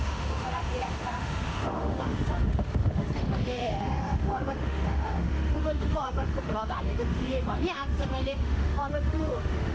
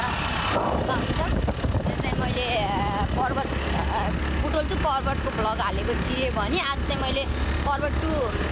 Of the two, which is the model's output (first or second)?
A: first